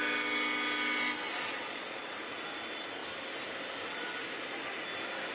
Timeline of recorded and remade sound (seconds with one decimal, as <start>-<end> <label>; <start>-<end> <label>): 0.0-1.3 recorded; 1.3-2.0 remade; 2.0-5.3 recorded